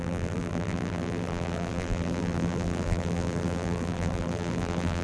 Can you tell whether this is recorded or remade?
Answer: remade